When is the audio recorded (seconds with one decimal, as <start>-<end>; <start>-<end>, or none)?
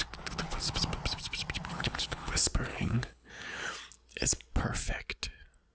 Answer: 0.0-1.7; 2.3-2.7; 3.3-5.7